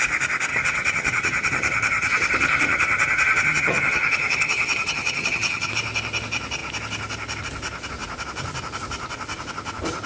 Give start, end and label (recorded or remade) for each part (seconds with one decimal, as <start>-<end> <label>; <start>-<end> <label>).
0.0-0.5 recorded; 0.5-5.7 remade; 5.7-10.1 recorded

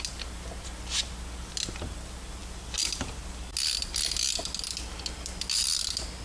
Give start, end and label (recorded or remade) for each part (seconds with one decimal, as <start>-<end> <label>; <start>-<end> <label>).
0.0-6.2 recorded

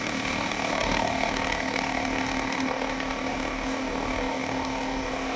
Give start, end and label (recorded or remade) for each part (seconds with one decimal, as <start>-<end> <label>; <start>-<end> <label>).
0.0-5.4 remade

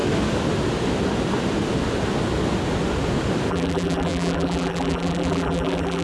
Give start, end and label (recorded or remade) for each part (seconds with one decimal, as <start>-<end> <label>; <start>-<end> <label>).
0.0-3.5 recorded; 3.5-6.0 remade